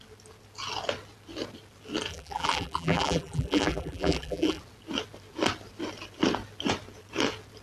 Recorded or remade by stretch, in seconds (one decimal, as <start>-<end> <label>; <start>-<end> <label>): 0.0-2.1 recorded; 2.1-4.6 remade; 4.6-7.6 recorded